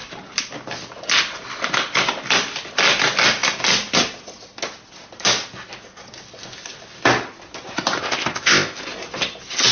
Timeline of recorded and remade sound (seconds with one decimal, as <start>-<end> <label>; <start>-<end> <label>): 0.0-8.0 recorded; 8.0-8.8 remade; 8.8-9.7 recorded